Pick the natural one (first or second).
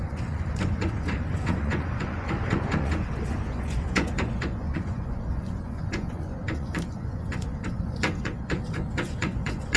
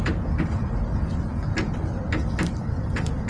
second